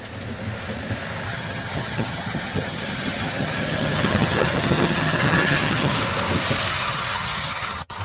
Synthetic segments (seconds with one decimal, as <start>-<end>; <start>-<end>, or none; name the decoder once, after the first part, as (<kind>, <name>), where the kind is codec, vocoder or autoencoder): 1.3-6.0 (vocoder, HiFi-GAN); 6.7-8.0